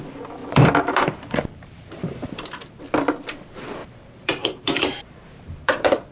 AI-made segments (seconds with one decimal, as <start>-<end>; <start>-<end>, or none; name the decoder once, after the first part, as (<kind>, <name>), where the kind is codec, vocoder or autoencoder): 0.4-2.8 (vocoder, BigVGAN v2); 3.8-6.1